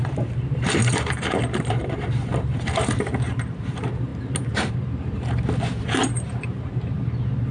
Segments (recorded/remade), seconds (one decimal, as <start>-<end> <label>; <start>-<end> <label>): 0.0-7.5 remade